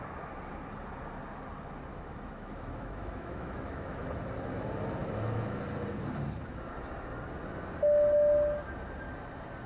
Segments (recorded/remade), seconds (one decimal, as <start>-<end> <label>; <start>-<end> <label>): 0.0-1.9 recorded; 1.9-4.0 remade; 4.0-5.0 recorded; 5.0-5.6 remade; 5.6-9.7 recorded

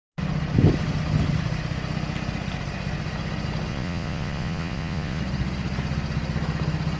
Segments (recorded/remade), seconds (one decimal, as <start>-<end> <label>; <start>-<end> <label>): 0.0-3.7 recorded; 3.7-5.2 remade; 5.2-7.0 recorded

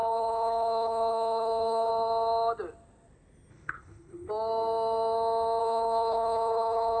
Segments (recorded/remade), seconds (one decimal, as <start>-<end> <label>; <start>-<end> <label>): 0.0-1.9 remade; 1.9-3.5 recorded; 3.5-4.3 remade; 4.3-5.6 recorded; 5.6-7.0 remade

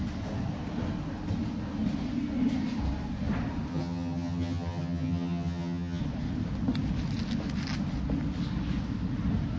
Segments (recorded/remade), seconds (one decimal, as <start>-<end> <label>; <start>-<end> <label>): 0.0-3.7 recorded; 3.7-6.0 remade; 6.0-9.6 recorded

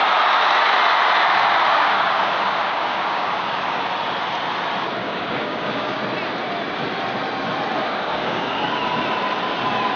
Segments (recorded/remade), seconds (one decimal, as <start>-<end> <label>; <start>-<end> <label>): 0.0-1.7 recorded; 1.7-3.8 remade; 3.8-5.0 recorded; 5.0-6.0 remade; 6.0-7.8 recorded; 7.8-8.6 remade; 8.6-10.0 recorded

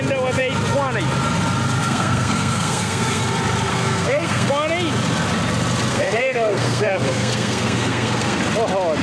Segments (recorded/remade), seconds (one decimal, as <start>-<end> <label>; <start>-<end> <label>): 0.0-1.8 recorded; 1.8-3.2 remade; 3.2-3.7 recorded; 3.7-4.5 remade; 4.5-5.9 recorded; 5.9-8.4 remade; 8.4-9.0 recorded

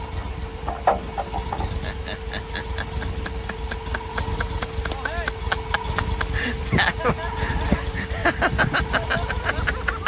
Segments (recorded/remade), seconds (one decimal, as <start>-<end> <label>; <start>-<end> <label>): 0.0-10.1 recorded